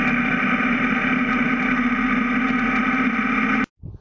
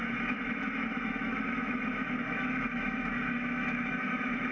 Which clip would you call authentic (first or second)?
first